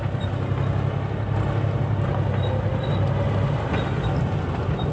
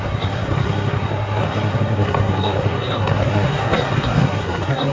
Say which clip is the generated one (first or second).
second